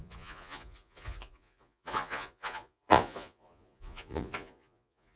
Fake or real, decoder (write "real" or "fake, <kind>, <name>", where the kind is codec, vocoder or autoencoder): fake, vocoder, Vocos